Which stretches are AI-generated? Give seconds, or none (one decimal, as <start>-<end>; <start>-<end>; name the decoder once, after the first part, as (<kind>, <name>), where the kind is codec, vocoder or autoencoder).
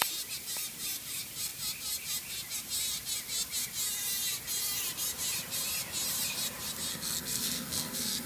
6.9-8.3 (codec, SNAC)